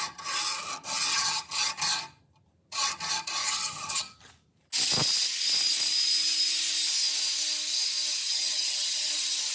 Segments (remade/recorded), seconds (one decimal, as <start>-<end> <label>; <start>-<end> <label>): 0.0-1.1 recorded; 1.1-1.7 remade; 1.7-3.4 recorded; 3.4-4.3 remade; 4.3-8.1 recorded; 8.1-9.1 remade; 9.1-9.5 recorded